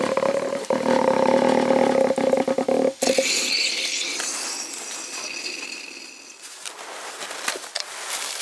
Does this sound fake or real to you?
real